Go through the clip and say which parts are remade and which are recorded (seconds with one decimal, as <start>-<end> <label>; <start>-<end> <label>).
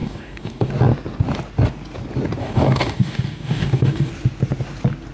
0.0-0.7 remade; 0.7-2.4 recorded; 2.4-4.1 remade; 4.1-5.1 recorded